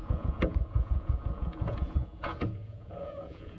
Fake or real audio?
fake